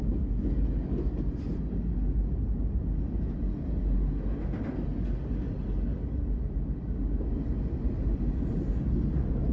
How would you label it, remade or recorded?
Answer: recorded